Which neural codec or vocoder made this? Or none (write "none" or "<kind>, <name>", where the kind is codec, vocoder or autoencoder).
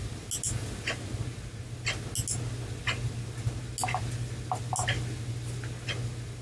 none